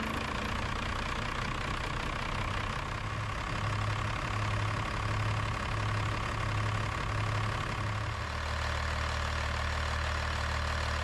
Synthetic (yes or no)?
no